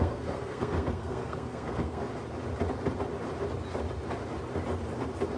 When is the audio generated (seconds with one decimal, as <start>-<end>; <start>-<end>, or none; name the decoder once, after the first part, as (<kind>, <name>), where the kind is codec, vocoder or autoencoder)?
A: 0.0-2.0 (codec, SNAC)